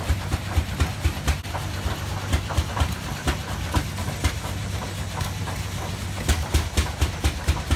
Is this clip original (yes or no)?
yes